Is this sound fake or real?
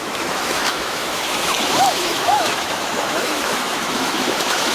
fake